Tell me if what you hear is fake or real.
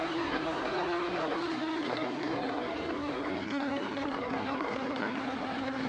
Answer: fake